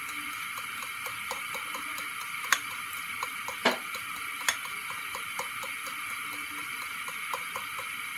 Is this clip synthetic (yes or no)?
no